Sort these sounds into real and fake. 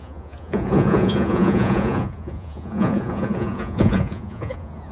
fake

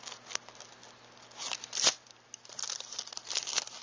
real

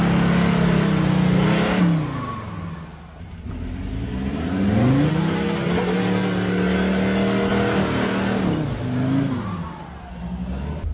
real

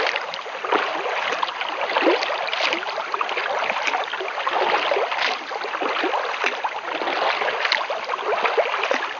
real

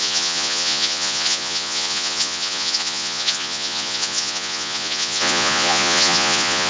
fake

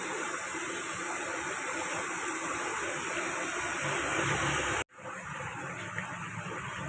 real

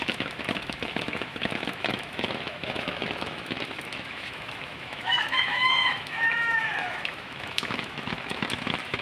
fake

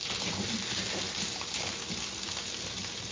real